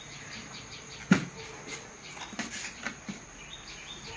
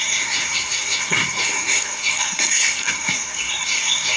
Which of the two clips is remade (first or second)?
second